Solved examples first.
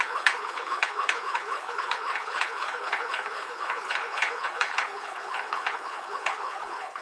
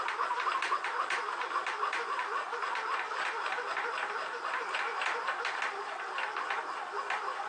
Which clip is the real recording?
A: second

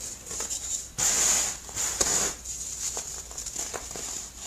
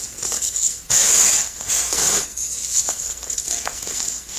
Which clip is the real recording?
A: first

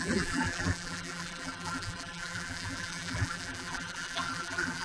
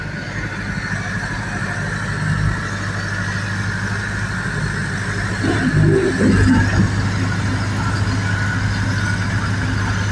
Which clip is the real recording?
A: second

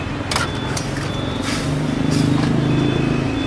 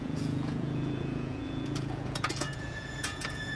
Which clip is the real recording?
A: first